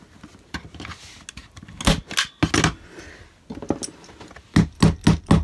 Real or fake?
real